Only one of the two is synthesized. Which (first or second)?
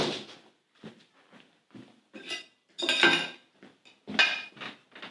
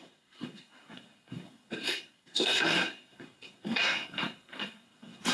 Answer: second